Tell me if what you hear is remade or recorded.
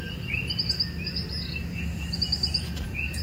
recorded